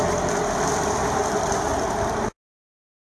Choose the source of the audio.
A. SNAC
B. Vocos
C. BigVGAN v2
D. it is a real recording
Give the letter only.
D